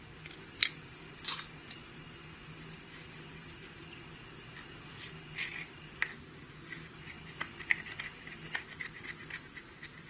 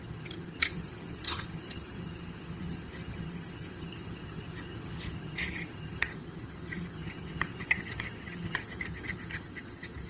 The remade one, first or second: second